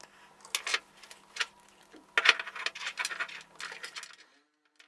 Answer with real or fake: real